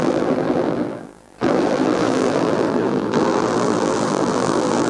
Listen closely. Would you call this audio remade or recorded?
remade